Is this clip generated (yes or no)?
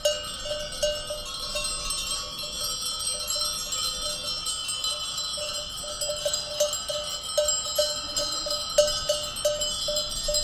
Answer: no